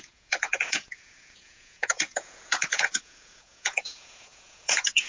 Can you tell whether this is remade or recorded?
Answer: remade